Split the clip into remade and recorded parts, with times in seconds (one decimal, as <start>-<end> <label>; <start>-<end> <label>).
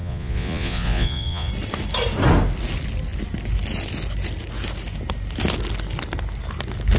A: 0.0-1.5 remade; 1.5-7.0 recorded